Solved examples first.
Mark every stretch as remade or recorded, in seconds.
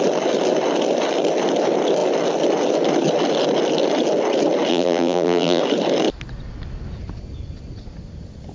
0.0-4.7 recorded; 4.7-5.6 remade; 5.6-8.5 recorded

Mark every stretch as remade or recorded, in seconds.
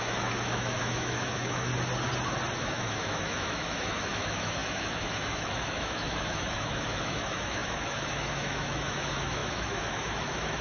0.0-1.7 remade; 1.7-2.6 recorded; 2.6-10.6 remade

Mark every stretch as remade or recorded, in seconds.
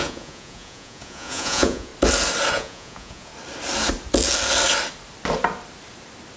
0.0-1.9 remade; 1.9-2.5 recorded; 2.5-3.3 remade; 3.3-6.4 recorded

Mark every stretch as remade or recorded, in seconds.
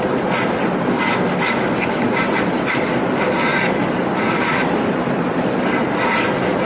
0.0-6.7 recorded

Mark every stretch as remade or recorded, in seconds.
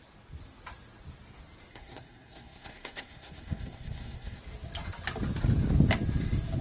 0.0-1.7 recorded; 1.7-4.4 remade; 4.4-6.6 recorded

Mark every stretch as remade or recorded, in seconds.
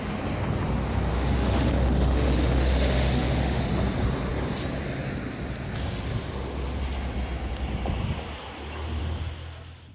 0.0-1.1 recorded; 1.1-3.6 remade; 3.6-9.9 recorded